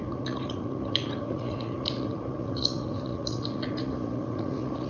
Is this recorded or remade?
remade